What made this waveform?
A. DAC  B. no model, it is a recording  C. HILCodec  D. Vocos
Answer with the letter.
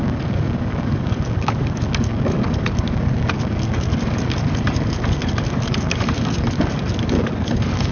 A